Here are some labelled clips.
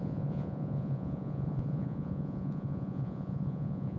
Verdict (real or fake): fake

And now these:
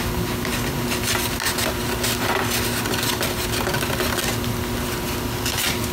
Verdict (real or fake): real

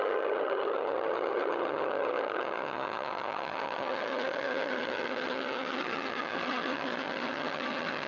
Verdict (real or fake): fake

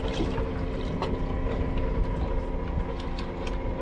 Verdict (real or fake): real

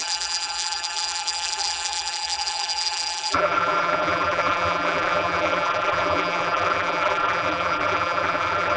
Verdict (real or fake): fake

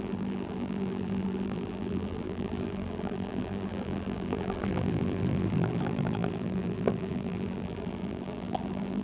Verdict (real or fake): fake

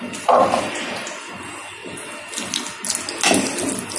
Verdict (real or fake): real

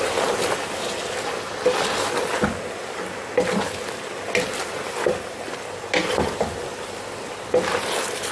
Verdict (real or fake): real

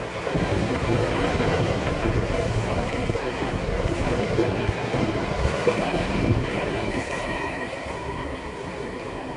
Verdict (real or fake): fake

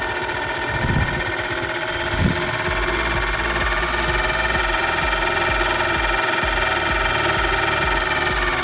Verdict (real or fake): real